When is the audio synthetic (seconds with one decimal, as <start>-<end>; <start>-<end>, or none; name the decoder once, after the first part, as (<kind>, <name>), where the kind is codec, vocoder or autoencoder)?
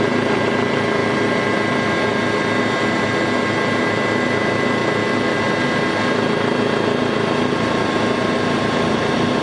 none